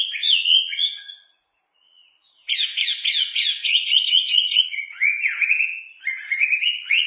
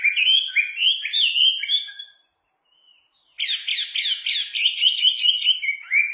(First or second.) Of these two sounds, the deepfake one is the first